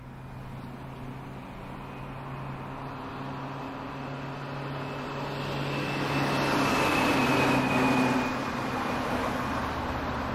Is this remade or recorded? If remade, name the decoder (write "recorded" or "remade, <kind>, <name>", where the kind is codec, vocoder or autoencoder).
recorded